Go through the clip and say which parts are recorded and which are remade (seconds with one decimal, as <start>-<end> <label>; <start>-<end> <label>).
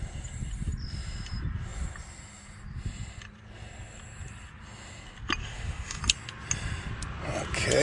0.0-5.4 recorded; 5.4-6.0 remade; 6.0-7.8 recorded